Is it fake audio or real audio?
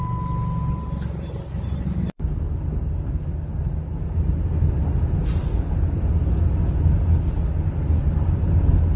real